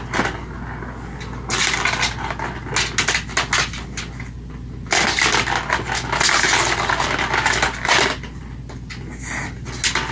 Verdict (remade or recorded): recorded